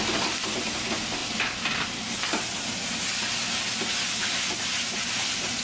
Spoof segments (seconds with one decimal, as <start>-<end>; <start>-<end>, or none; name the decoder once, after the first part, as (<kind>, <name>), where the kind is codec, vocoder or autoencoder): none